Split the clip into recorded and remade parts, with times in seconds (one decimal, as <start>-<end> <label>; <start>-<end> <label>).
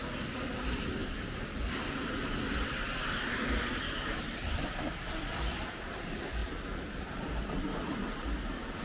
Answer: 0.0-1.0 recorded; 1.0-6.0 remade; 6.0-6.4 recorded; 6.4-8.8 remade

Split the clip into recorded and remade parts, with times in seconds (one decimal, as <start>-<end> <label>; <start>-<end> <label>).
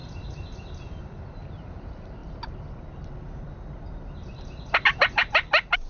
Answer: 0.0-1.2 recorded; 1.2-2.2 remade; 2.2-5.9 recorded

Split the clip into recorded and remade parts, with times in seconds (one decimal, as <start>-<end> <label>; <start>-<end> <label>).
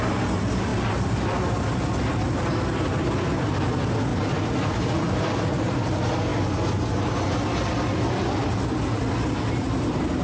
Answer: 0.0-4.1 recorded; 4.1-5.8 remade; 5.8-10.2 recorded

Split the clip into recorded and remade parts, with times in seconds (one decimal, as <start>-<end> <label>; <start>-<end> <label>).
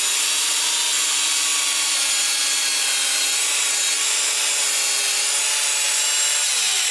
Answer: 0.0-6.9 recorded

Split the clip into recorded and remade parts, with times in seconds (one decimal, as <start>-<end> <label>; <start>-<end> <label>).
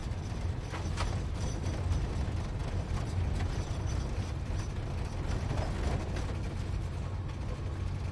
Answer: 0.0-1.8 remade; 1.8-2.6 recorded; 2.6-4.6 remade; 4.6-8.1 recorded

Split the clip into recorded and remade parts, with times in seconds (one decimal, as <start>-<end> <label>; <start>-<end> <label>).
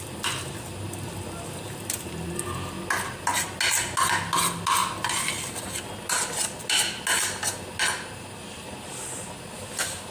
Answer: 0.0-10.1 recorded